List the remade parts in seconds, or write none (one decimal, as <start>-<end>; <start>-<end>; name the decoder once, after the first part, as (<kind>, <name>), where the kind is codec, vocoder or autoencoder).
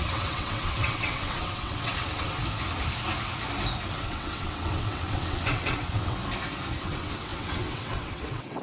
0.0-2.4 (vocoder, WaveNeXt); 3.9-6.2; 6.8-8.6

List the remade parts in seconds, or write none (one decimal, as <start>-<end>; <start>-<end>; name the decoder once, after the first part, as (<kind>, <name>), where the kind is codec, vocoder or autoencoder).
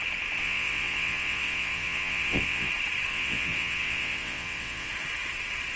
0.4-2.7 (vocoder, WaveNeXt); 3.1-4.9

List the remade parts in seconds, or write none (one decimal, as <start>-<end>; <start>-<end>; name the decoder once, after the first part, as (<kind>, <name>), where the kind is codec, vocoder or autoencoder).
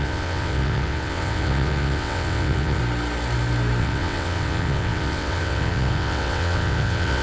0.0-2.8 (vocoder, WaveNeXt); 3.8-7.2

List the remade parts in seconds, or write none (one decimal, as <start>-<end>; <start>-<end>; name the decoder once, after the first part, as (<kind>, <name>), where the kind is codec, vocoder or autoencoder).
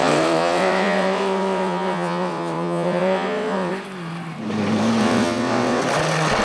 0.0-3.7 (vocoder, WaveNeXt); 5.0-5.8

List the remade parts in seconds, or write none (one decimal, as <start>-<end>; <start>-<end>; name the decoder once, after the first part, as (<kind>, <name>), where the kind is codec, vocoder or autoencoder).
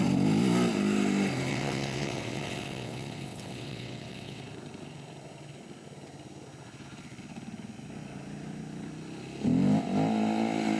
1.5-4.4 (vocoder, WaveNeXt)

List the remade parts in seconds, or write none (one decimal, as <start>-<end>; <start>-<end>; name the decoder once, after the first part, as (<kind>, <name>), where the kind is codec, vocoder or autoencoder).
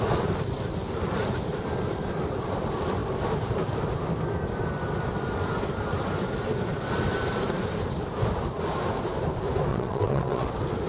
9.7-10.5 (vocoder, WaveNeXt)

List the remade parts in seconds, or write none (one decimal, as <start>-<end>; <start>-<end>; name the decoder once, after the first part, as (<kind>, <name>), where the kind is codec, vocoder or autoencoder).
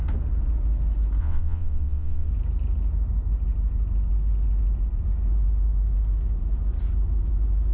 1.2-2.3 (vocoder, WaveNeXt)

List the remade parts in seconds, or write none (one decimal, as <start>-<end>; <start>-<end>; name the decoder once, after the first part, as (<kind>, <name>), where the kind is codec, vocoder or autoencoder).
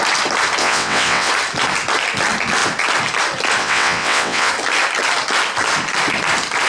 0.6-1.3 (vocoder, WaveNeXt); 3.6-4.5